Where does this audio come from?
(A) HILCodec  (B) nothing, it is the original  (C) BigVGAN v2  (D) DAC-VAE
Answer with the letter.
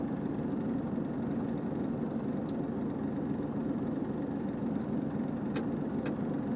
B